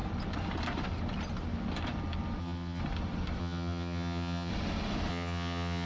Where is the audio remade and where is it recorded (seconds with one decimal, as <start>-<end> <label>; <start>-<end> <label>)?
0.0-2.4 recorded; 2.4-2.8 remade; 2.8-3.4 recorded; 3.4-4.5 remade; 4.5-5.1 recorded; 5.1-5.9 remade